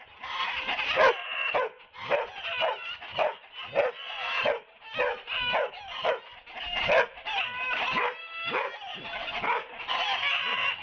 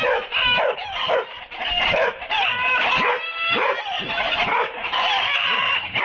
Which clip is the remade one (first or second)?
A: second